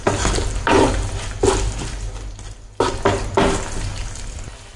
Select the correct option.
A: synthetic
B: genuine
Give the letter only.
B